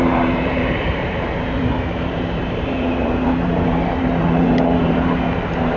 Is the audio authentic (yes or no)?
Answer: no